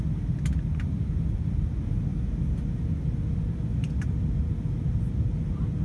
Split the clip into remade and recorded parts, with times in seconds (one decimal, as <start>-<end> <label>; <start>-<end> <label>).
0.0-5.8 recorded